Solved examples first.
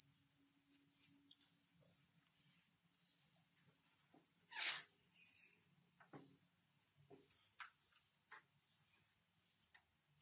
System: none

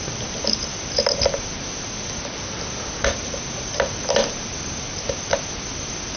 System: none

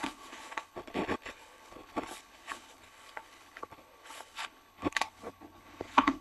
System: codec, HILCodec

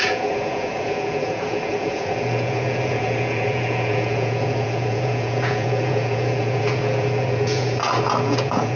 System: vocoder, Vocos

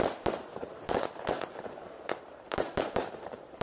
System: vocoder, BigVGAN v2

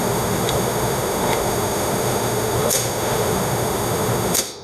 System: autoencoder, DAC-VAE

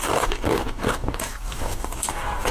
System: codec, DAC